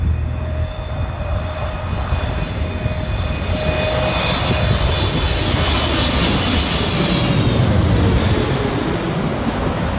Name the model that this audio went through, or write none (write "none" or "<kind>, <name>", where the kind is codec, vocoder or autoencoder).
none